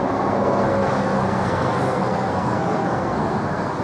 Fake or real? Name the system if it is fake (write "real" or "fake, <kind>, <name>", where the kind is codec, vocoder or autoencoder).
fake, codec, SNAC